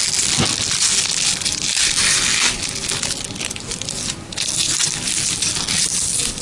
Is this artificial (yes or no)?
no